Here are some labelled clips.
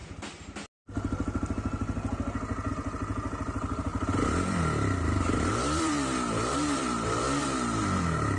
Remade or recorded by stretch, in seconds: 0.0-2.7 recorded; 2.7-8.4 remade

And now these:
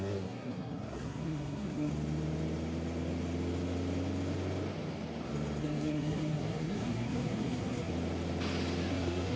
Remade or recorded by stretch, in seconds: 0.0-1.9 remade; 1.9-5.6 recorded; 5.6-7.9 remade; 7.9-8.9 recorded; 8.9-9.4 remade

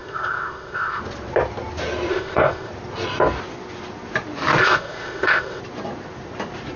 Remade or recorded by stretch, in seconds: 0.0-1.0 remade; 1.0-2.1 recorded; 2.1-2.7 remade; 2.7-4.6 recorded; 4.6-5.6 remade; 5.6-6.8 recorded